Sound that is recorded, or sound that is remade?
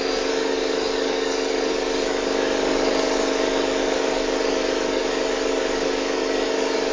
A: remade